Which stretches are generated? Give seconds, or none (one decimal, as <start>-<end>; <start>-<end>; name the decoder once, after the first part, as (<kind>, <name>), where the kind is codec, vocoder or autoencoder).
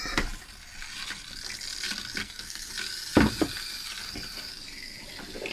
2.2-2.7 (codec, SNAC)